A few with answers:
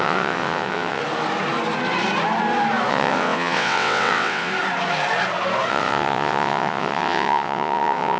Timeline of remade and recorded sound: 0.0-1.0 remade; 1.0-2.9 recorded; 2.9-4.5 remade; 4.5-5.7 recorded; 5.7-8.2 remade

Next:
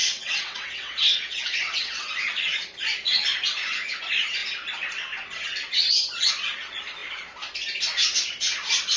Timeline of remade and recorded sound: 0.0-2.1 remade; 2.1-9.0 recorded